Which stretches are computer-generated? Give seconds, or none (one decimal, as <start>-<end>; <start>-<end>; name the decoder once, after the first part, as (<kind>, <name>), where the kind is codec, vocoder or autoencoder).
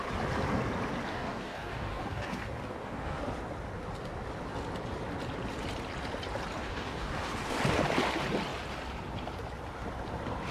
1.1-3.2 (codec, DAC); 6.6-7.6